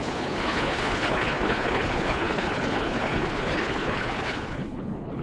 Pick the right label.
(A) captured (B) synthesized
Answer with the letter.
B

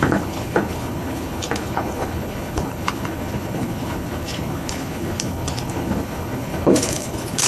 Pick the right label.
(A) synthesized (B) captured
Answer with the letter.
A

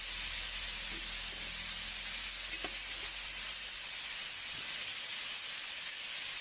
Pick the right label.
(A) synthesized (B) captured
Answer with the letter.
B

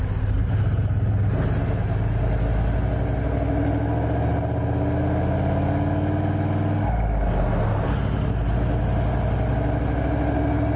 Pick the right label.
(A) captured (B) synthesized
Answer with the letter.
A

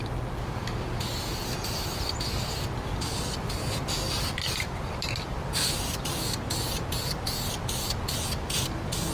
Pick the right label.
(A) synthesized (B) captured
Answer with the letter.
B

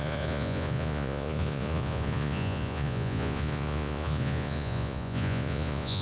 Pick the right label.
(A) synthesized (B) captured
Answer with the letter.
A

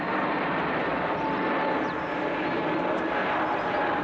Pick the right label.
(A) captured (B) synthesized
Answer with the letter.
A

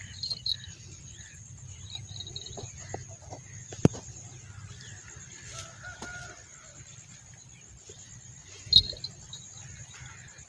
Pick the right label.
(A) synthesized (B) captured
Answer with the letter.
B